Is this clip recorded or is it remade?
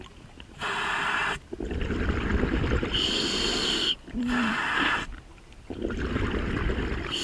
recorded